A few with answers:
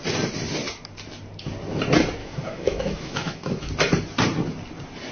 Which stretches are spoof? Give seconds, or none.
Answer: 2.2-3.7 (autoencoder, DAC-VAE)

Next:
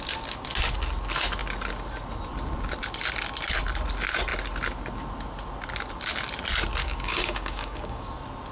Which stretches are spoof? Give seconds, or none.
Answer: 6.8-8.1 (codec, DAC)

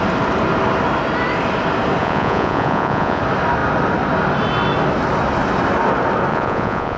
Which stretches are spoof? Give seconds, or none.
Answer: 2.0-3.2 (vocoder, Vocos); 6.3-7.0

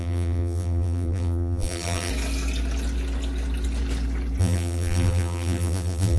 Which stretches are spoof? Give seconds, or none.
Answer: 0.0-2.1 (vocoder, BigVGAN v2); 4.4-6.2

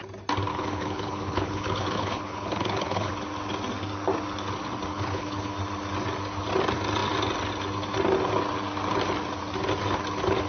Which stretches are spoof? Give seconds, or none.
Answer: 0.5-3.1 (codec, HILCodec); 4.9-5.5